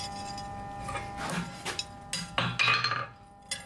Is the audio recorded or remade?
recorded